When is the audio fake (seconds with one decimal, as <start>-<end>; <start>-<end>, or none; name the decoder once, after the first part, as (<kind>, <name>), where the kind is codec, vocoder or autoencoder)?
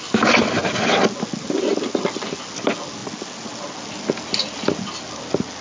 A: none